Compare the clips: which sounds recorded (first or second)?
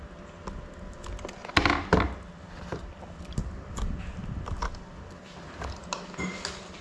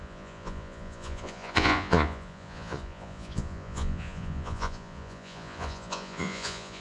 first